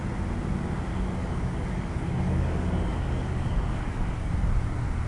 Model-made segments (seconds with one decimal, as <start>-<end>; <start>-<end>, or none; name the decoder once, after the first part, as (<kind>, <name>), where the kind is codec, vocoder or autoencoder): 1.2-4.3 (codec, DAC)